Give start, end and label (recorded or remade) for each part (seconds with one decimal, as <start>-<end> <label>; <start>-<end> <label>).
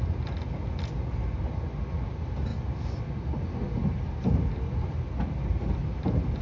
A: 0.0-6.4 recorded